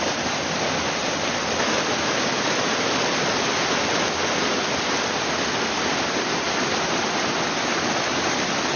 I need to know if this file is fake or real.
real